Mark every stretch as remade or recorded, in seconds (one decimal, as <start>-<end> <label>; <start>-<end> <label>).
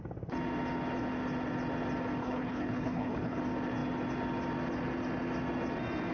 0.0-2.2 recorded; 2.2-3.4 remade; 3.4-6.1 recorded